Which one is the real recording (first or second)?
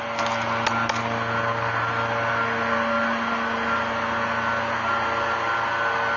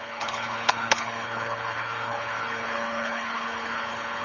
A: first